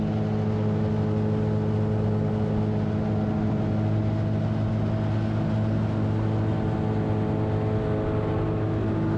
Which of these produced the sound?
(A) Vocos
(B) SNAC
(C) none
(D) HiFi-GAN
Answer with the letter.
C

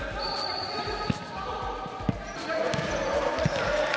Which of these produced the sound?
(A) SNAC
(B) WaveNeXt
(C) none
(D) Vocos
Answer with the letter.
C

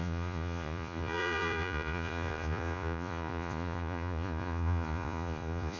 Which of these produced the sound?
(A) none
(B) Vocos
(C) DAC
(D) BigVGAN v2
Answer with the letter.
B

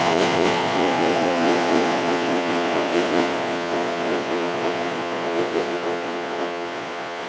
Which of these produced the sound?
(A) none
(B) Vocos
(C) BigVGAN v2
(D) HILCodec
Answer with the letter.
B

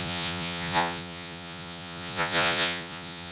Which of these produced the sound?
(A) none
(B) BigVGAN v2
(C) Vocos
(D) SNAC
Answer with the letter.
C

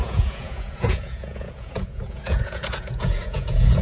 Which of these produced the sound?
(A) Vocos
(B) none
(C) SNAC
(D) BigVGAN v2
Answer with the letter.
A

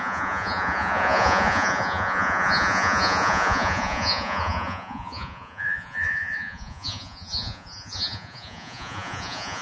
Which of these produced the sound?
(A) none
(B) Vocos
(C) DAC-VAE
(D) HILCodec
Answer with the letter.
B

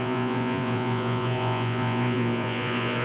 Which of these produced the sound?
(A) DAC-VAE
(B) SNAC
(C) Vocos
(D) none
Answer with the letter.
C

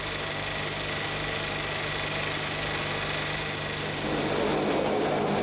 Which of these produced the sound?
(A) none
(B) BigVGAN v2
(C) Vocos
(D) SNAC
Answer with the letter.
A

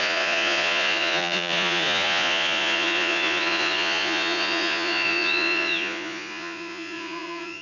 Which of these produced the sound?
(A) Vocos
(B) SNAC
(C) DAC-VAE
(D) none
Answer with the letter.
A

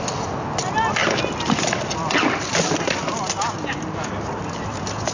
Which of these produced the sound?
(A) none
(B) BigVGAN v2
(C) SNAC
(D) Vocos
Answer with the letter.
A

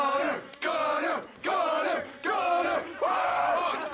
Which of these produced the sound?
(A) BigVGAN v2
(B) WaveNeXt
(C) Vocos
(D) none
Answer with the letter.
C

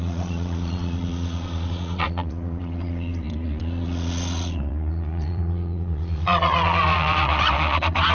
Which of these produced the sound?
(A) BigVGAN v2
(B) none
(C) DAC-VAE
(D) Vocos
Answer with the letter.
D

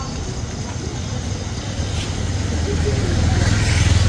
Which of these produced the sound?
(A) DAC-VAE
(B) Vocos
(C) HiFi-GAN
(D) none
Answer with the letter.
D